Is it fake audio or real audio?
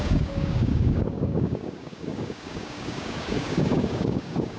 fake